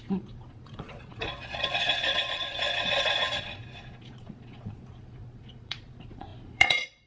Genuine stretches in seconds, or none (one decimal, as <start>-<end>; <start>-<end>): none